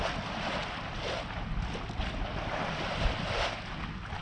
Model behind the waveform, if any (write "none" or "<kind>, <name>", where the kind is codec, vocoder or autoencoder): none